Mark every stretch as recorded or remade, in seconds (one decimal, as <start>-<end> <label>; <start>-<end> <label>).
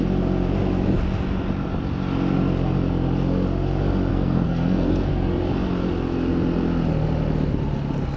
0.0-4.1 recorded; 4.1-5.1 remade; 5.1-8.2 recorded